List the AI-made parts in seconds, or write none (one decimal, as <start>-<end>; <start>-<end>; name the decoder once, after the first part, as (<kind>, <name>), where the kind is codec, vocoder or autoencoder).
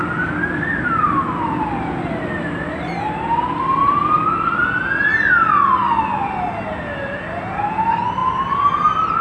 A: 0.0-4.6 (vocoder, BigVGAN v2)